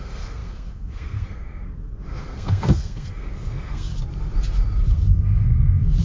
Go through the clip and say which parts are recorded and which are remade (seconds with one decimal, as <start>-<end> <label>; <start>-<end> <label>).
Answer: 0.0-3.9 remade; 3.9-4.9 recorded; 4.9-6.0 remade